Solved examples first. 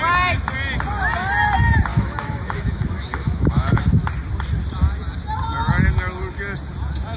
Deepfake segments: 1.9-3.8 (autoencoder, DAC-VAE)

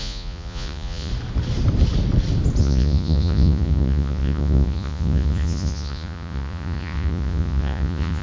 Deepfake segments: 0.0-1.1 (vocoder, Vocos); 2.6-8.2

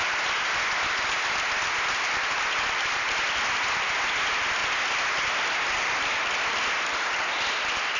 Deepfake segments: none

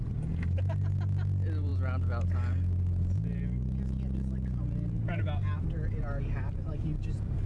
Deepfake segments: none

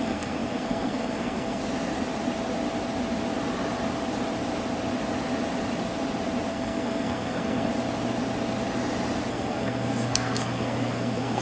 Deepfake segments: 0.0-1.6 (codec, SNAC); 6.5-7.7; 9.3-11.4

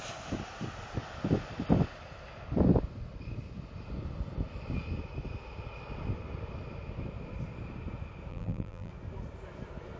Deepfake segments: 8.3-8.9 (vocoder, BigVGAN v2)

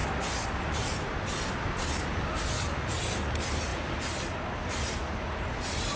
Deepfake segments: none